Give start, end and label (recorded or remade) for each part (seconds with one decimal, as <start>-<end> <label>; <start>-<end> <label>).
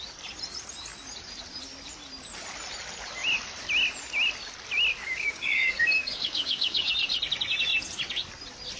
0.0-5.0 recorded; 5.0-6.9 remade; 6.9-8.8 recorded